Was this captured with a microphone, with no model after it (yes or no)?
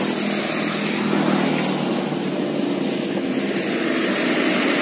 yes